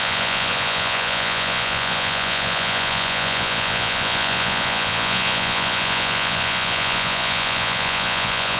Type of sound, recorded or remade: remade